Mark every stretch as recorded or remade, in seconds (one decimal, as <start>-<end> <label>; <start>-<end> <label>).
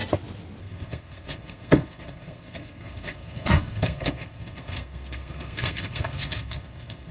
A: 0.0-0.6 recorded; 0.6-7.1 remade